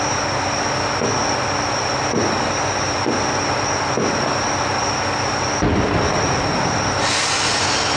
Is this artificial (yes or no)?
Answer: no